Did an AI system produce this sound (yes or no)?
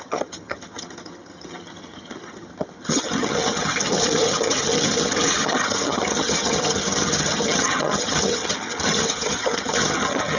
yes